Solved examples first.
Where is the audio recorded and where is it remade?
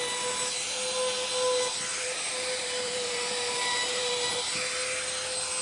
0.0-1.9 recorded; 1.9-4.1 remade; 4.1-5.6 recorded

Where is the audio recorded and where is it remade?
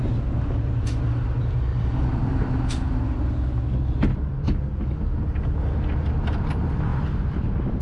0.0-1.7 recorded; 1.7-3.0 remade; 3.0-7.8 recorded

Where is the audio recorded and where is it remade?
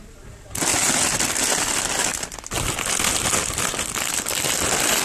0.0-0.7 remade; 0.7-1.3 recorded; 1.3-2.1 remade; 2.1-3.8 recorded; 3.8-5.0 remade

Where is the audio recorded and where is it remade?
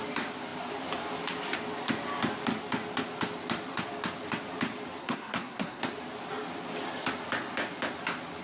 0.0-5.0 recorded; 5.0-5.8 remade; 5.8-8.4 recorded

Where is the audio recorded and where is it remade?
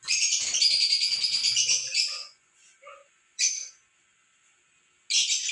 0.0-1.9 recorded; 1.9-3.5 remade; 3.5-5.5 recorded